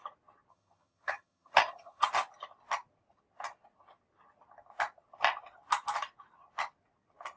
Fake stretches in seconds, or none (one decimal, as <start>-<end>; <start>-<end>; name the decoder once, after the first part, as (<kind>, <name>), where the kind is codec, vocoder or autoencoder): 0.5-2.1 (vocoder, HiFi-GAN)